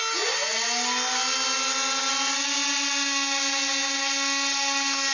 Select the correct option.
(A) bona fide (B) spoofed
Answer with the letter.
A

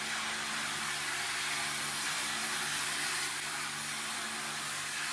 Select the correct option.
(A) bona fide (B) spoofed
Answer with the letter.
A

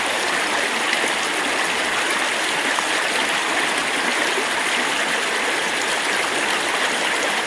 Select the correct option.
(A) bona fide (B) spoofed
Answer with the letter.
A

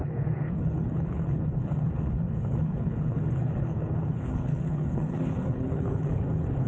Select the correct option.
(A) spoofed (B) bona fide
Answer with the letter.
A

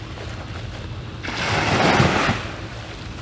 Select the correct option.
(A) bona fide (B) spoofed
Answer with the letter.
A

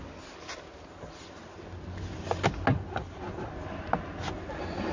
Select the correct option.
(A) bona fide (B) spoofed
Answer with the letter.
A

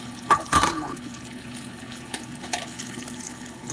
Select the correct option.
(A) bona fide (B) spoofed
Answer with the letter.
B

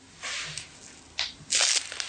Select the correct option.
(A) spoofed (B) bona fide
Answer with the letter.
B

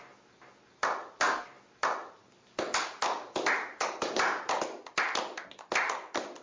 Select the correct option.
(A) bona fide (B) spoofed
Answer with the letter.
A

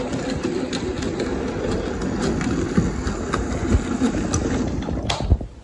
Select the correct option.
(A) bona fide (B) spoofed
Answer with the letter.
A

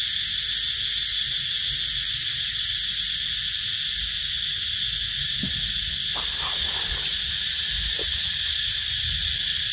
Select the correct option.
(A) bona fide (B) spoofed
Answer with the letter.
A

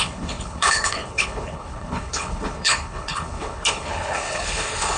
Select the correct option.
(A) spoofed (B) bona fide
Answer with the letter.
A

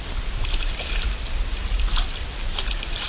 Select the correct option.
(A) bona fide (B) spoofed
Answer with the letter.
A